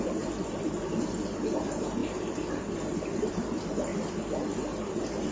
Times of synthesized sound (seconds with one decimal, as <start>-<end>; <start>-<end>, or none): none